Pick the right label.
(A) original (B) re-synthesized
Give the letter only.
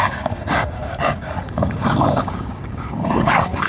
B